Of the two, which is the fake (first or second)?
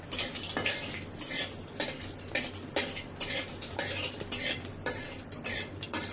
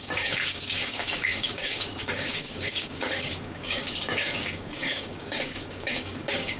second